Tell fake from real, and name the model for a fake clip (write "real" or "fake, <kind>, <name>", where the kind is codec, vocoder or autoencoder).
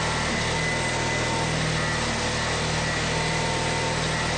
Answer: real